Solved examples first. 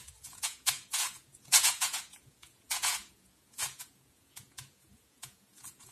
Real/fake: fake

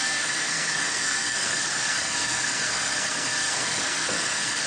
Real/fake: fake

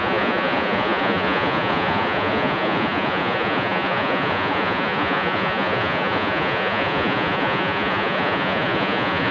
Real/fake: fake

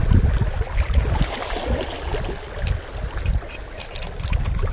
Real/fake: real